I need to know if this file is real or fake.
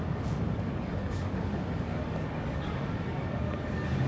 fake